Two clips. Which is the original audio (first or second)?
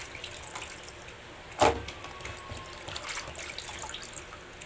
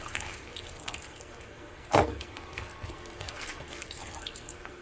first